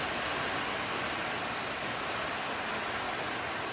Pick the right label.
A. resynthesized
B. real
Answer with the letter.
B